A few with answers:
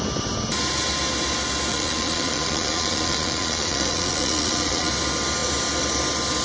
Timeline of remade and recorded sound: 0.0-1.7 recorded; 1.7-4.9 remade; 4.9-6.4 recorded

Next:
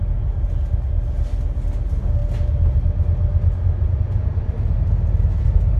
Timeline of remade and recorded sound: 0.0-5.8 recorded

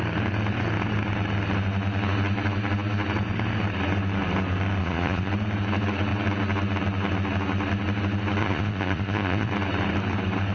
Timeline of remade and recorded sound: 0.0-4.8 recorded; 4.8-5.3 remade; 5.3-8.4 recorded; 8.4-9.5 remade; 9.5-10.5 recorded

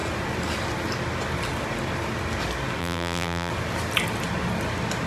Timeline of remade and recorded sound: 0.0-2.8 recorded; 2.8-3.5 remade; 3.5-5.1 recorded

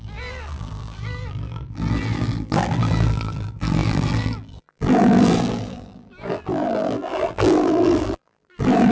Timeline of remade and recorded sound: 0.0-8.9 remade

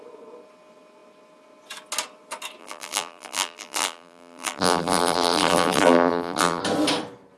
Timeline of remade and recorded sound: 0.0-2.6 recorded; 2.6-6.6 remade; 6.6-7.4 recorded

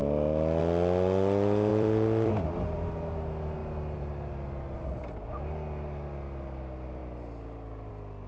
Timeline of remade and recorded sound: 0.0-0.6 remade; 0.6-1.7 recorded; 1.7-2.3 remade; 2.3-3.6 recorded; 3.6-4.3 remade; 4.3-8.3 recorded

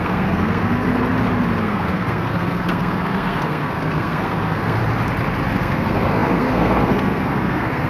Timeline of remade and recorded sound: 0.0-0.9 remade; 0.9-1.6 recorded; 1.6-4.8 remade; 4.8-5.6 recorded; 5.6-7.9 remade